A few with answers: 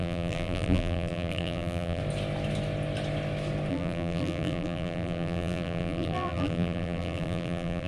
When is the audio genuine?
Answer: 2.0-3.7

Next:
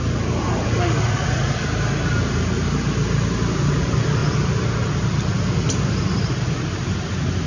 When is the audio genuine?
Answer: 0.0-7.5

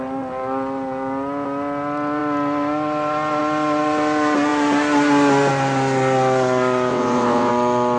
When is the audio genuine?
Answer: 0.0-6.9; 7.5-8.0